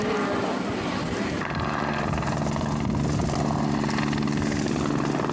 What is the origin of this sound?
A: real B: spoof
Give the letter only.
A